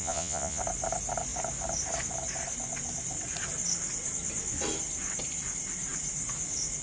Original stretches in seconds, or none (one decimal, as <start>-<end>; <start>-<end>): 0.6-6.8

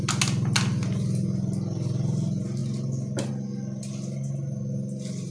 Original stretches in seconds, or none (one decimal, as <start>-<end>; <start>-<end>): 0.0-5.3

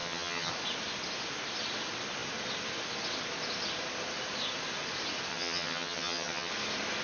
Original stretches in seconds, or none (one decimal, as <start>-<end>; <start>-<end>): 0.5-5.3; 6.5-7.0

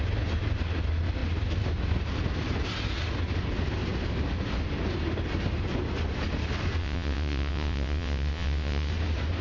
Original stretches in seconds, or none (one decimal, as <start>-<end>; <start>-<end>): 0.0-6.8; 8.9-9.4